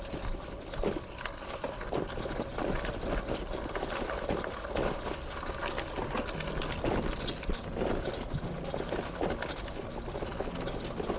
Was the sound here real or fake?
real